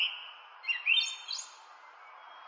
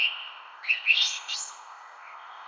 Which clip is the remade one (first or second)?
second